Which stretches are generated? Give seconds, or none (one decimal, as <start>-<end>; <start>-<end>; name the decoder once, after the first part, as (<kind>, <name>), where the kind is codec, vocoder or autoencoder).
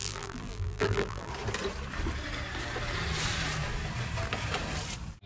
0.0-1.3 (vocoder, BigVGAN v2)